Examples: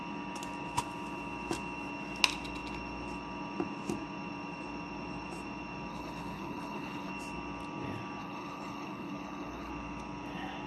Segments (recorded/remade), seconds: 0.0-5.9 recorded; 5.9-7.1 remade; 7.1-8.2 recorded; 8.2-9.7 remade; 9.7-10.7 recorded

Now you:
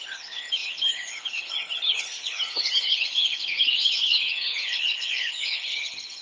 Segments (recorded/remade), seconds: 0.0-6.2 remade

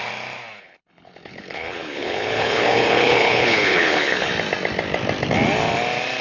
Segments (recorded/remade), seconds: 0.0-0.6 recorded; 0.6-4.3 remade; 4.3-6.2 recorded

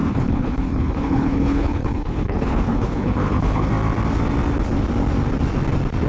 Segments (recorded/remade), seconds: 0.0-3.7 remade; 3.7-6.1 recorded

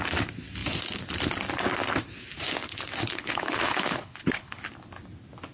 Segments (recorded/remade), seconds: 0.0-3.0 recorded; 3.0-4.6 remade; 4.6-5.5 recorded

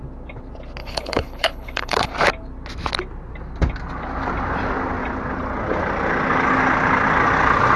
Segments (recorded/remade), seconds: 0.0-0.8 recorded; 0.8-2.1 remade; 2.1-7.8 recorded